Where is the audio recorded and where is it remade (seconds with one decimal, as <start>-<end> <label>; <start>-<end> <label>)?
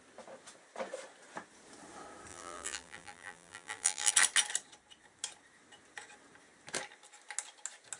0.0-2.3 recorded; 2.3-4.1 remade; 4.1-8.0 recorded